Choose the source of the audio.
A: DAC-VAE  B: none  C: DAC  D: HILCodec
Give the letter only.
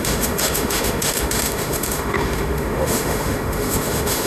A